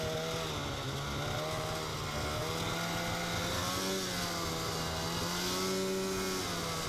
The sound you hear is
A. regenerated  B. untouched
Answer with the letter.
B